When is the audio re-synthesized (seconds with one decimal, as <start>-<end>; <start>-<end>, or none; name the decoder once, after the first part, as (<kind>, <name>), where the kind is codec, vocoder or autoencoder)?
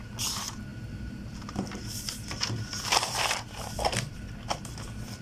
none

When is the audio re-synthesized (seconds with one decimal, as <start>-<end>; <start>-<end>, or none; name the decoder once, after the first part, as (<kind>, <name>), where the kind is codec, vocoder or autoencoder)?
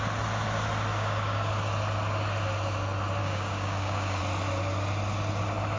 0.9-1.5 (codec, DAC); 3.2-4.2